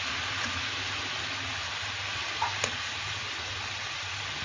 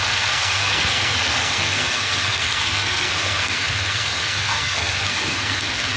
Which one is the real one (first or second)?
first